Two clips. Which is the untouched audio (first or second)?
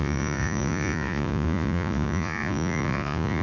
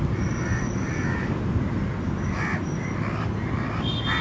second